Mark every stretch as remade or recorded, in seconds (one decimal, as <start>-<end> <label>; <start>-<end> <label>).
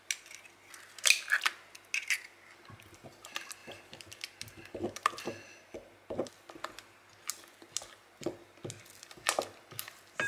0.0-10.3 recorded